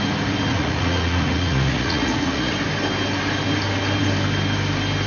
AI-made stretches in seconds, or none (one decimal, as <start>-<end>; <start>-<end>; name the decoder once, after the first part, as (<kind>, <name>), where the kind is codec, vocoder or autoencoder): 0.5-2.5 (vocoder, Vocos)